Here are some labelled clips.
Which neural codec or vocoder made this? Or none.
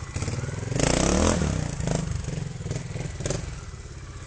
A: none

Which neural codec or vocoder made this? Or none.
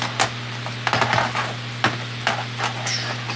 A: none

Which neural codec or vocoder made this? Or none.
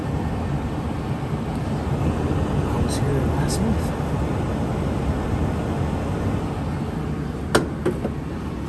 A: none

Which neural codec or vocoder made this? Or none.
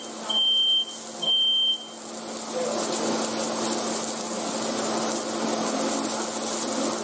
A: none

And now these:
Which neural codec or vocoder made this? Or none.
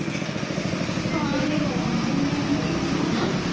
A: none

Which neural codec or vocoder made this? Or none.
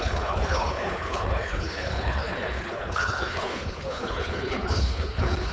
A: codec, HILCodec